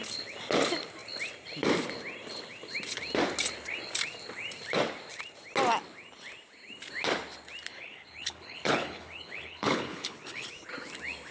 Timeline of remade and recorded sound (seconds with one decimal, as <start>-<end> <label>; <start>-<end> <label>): 0.0-7.7 recorded; 7.7-10.5 remade; 10.5-11.3 recorded